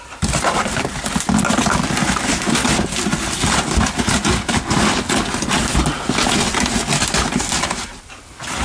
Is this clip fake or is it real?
real